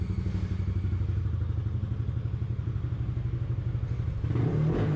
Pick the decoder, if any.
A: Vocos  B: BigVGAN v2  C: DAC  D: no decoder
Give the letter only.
D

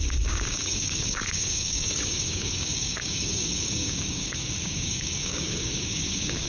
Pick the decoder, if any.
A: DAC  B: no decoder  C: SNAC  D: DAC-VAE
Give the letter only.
A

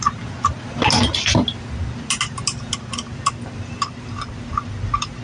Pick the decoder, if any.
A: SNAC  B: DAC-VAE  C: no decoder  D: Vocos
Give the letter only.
C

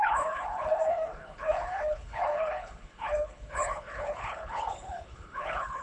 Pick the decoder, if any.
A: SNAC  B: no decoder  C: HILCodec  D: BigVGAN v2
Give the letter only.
C